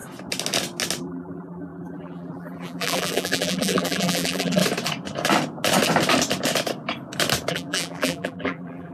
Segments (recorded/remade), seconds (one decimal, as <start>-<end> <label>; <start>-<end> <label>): 0.0-1.0 recorded; 1.0-4.6 remade; 4.6-7.5 recorded; 7.5-8.9 remade